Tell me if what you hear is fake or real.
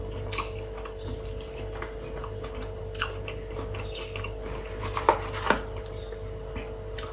real